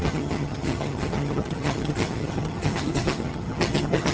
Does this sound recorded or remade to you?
remade